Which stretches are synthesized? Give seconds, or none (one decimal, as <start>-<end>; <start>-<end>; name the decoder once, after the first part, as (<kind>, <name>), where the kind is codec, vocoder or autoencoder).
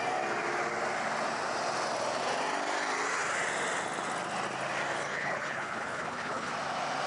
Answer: 5.1-6.5 (codec, HILCodec)